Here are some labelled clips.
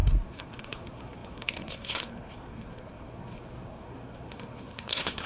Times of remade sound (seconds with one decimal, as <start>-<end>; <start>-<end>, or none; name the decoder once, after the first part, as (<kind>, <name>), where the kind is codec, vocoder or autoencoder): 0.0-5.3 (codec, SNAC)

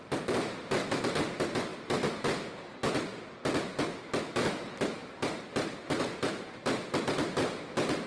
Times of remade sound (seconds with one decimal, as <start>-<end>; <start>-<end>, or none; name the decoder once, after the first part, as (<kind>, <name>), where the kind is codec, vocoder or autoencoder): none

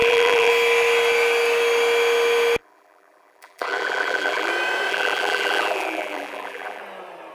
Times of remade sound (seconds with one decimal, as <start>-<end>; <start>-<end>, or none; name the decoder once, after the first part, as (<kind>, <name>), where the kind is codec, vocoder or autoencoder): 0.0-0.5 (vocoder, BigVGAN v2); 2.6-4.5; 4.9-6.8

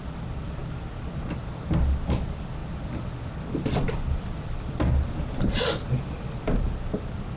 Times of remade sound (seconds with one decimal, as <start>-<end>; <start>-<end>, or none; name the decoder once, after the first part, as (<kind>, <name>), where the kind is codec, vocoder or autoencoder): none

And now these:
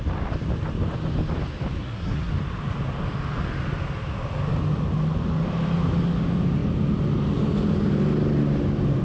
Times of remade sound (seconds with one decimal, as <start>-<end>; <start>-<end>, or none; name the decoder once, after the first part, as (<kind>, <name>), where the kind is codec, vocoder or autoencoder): 1.8-2.3 (codec, SNAC)